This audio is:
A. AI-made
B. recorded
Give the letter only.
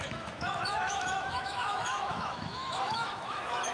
A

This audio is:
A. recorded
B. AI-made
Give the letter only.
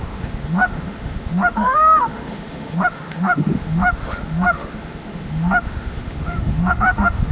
B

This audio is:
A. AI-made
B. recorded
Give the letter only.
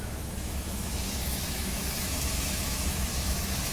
A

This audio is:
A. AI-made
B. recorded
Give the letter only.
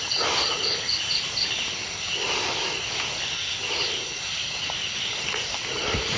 B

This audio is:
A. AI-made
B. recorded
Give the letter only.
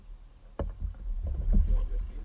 B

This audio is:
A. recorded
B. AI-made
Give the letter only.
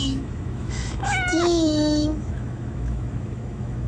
B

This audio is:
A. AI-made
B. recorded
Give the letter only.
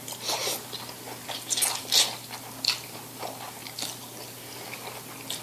B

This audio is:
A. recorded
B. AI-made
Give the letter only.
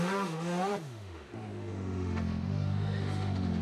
B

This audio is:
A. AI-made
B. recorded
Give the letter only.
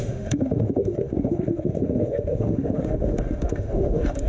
A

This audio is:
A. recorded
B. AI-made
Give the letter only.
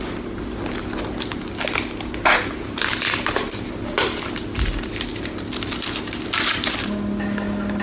A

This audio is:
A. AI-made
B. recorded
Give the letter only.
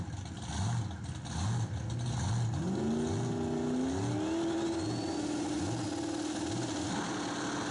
B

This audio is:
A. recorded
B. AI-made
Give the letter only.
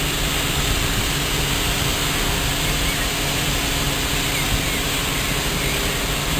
A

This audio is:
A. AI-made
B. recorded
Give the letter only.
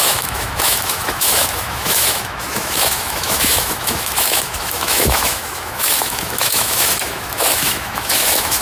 A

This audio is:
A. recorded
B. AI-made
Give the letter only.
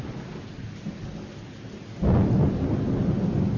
A